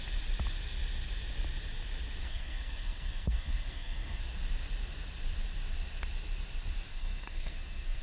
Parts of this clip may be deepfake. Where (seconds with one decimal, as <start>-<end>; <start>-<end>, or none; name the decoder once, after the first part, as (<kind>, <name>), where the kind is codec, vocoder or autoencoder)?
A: 2.2-4.2 (codec, SNAC); 6.9-8.0